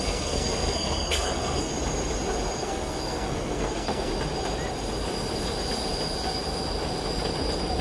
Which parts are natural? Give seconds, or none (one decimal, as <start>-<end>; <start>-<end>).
1.7-2.6; 4.1-7.8